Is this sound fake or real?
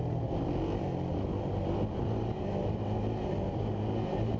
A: real